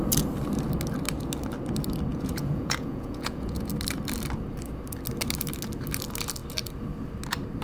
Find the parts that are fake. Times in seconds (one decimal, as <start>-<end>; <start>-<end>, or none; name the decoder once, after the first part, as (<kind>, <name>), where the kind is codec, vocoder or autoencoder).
2.1-3.7 (vocoder, Vocos)

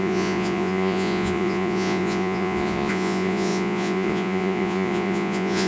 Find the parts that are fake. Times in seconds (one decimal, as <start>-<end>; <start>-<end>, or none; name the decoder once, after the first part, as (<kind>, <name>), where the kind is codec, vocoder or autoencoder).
0.0-5.7 (vocoder, Vocos)

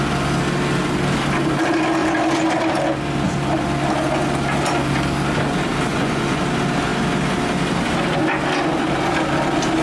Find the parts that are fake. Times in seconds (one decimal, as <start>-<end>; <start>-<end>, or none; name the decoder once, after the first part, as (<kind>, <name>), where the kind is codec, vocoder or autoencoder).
5.9-6.4 (vocoder, Vocos)